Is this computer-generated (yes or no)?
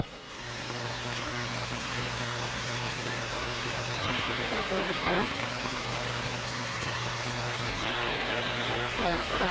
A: yes